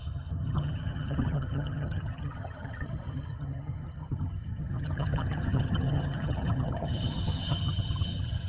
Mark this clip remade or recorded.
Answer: remade